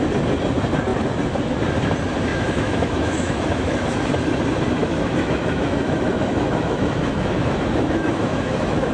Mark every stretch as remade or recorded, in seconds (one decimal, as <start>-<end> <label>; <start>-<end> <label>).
0.0-2.3 recorded; 2.3-4.0 remade; 4.0-4.8 recorded; 4.8-8.9 remade

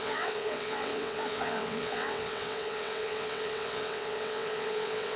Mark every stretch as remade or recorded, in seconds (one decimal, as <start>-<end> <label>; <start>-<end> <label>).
0.0-5.2 remade

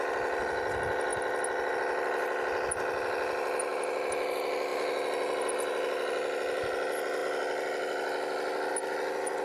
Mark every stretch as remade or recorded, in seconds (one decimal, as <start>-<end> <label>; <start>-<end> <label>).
0.0-9.4 recorded

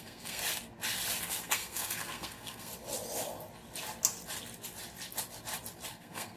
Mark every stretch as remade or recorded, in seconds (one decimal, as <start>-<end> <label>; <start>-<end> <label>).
0.0-0.4 remade; 0.4-1.2 recorded; 1.2-2.7 remade; 2.7-5.9 recorded; 5.9-6.4 remade

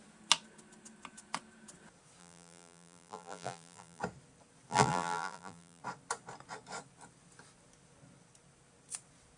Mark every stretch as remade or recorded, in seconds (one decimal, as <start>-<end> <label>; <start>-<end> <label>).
0.0-2.2 recorded; 2.2-4.0 remade; 4.0-4.7 recorded; 4.7-5.8 remade; 5.8-9.4 recorded

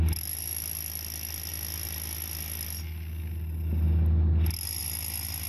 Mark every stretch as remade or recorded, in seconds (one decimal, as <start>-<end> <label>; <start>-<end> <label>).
0.0-5.5 recorded

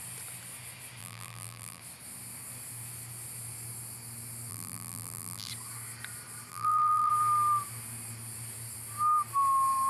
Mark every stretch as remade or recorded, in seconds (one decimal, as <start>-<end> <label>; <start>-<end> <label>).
0.0-1.0 recorded; 1.0-1.8 remade; 1.8-4.5 recorded; 4.5-5.5 remade; 5.5-6.5 recorded; 6.5-7.1 remade; 7.1-9.9 recorded

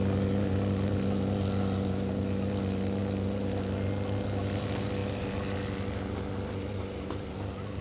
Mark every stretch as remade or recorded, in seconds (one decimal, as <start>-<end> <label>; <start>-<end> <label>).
0.0-7.8 recorded